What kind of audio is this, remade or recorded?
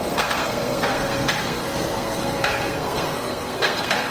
remade